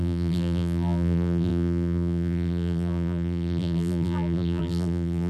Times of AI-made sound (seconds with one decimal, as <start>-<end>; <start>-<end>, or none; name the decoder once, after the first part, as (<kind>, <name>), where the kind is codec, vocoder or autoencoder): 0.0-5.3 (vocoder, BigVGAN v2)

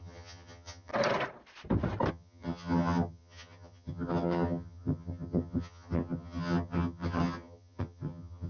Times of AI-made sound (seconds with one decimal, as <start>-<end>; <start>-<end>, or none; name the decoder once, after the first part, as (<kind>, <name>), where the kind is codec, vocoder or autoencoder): 0.0-0.9 (vocoder, HiFi-GAN); 2.1-8.5

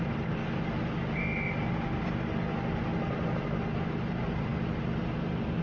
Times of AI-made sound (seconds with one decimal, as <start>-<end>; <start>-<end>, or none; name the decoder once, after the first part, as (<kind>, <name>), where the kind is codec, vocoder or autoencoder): 0.0-0.4 (vocoder, BigVGAN v2); 1.5-2.3; 4.1-4.5

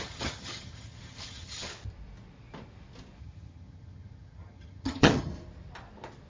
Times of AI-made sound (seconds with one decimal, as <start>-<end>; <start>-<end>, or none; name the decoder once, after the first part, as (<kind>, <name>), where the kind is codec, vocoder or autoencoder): 0.0-1.7 (vocoder, HiFi-GAN); 3.2-5.3

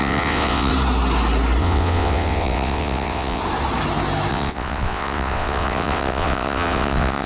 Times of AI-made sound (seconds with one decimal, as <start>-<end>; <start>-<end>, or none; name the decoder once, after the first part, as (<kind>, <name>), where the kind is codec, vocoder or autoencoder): 0.0-0.7 (vocoder, WaveNeXt); 1.6-3.4; 4.3-7.3